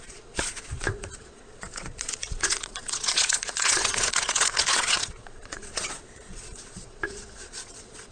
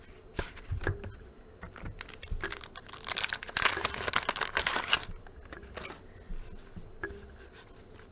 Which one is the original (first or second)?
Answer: second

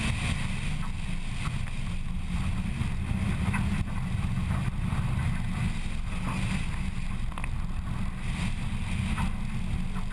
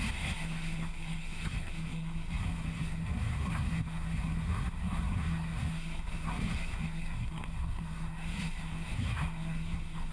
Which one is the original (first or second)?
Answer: first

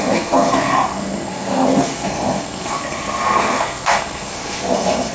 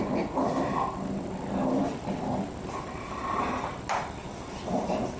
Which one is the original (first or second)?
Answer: second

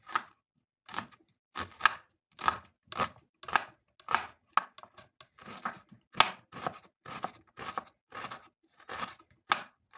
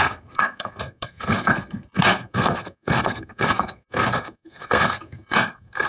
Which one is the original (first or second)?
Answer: first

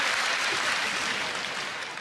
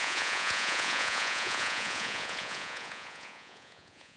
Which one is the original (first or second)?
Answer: first